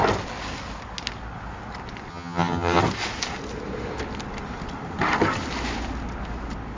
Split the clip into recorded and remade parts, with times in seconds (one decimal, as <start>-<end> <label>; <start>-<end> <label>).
0.0-2.1 recorded; 2.1-2.8 remade; 2.8-6.8 recorded